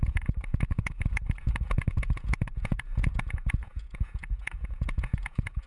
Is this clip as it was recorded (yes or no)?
no